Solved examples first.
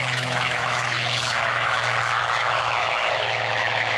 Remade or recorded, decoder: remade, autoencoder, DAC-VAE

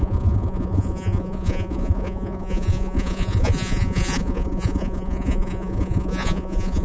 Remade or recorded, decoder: remade, vocoder, Vocos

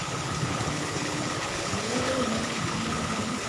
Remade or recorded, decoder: remade, codec, HILCodec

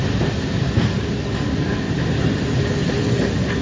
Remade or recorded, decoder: recorded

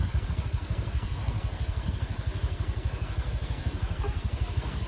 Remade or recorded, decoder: remade, codec, SNAC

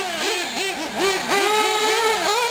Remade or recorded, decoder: recorded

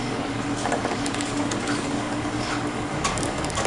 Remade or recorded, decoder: remade, codec, DAC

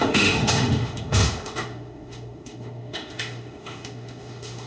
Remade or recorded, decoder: remade, autoencoder, DAC-VAE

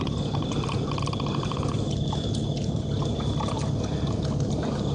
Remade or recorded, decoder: recorded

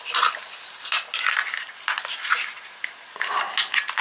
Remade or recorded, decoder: recorded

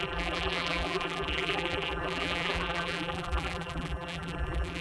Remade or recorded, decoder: remade, vocoder, BigVGAN v2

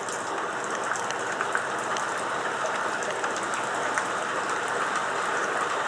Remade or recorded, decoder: recorded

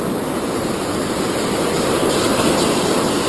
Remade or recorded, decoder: recorded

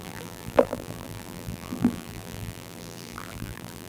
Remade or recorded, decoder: remade, vocoder, BigVGAN v2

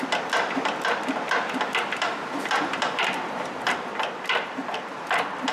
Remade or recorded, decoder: remade, vocoder, BigVGAN v2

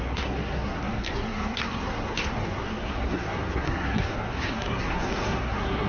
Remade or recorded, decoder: remade, codec, SNAC